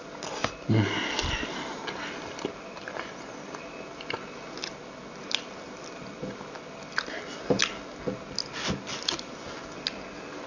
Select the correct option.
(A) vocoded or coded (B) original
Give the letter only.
B